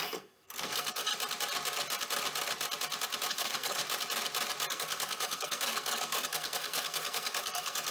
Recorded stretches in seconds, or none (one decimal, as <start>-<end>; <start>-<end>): 1.1-3.3; 3.8-4.7